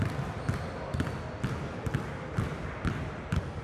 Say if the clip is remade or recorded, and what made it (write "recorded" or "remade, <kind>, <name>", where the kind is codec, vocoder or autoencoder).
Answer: recorded